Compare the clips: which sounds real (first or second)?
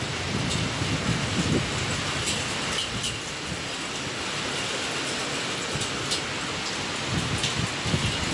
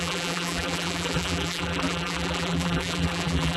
first